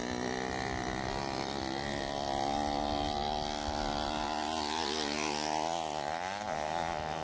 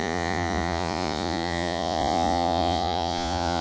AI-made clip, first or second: second